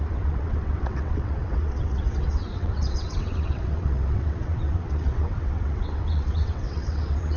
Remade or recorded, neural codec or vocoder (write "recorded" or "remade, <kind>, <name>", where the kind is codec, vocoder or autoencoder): remade, vocoder, WaveNeXt